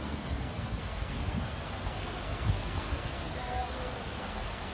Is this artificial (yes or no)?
yes